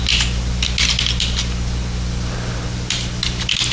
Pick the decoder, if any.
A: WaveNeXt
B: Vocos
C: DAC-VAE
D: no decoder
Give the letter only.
D